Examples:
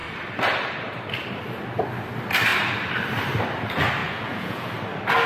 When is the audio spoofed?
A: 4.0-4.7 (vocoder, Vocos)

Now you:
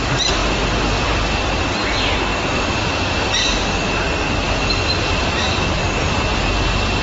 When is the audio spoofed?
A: 5.8-7.0 (vocoder, BigVGAN v2)

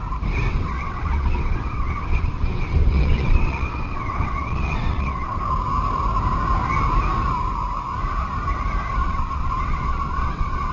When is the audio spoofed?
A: 0.5-5.4 (vocoder, WaveNeXt); 9.0-10.7

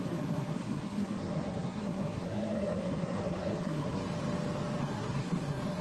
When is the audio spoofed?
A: 0.0-4.0 (codec, SNAC); 4.8-5.8

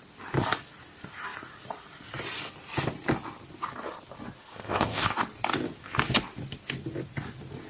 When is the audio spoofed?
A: 4.4-5.2 (codec, ZipCodec)